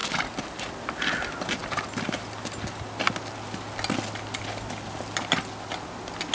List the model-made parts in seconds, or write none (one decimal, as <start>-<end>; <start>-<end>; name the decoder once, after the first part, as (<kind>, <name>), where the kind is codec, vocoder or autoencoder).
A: none